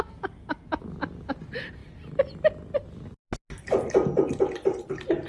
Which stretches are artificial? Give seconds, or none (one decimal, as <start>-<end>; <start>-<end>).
none